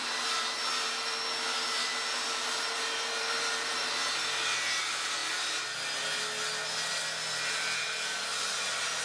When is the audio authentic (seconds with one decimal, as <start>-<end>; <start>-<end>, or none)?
4.8-9.0